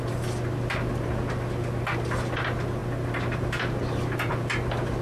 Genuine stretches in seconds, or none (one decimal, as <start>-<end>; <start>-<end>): 0.0-5.0